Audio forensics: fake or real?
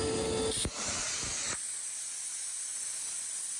real